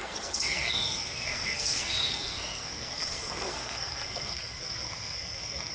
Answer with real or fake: fake